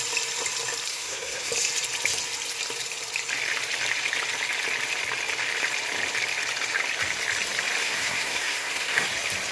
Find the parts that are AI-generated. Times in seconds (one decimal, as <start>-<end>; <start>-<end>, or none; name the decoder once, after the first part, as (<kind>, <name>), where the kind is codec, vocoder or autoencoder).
0.9-1.5 (codec, SNAC); 7.8-9.1